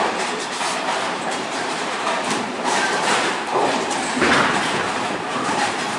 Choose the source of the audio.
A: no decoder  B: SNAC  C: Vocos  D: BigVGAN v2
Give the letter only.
D